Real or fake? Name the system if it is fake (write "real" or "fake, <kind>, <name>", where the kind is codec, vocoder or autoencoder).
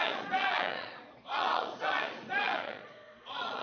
fake, vocoder, Vocos